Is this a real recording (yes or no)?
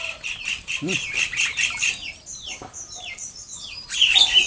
no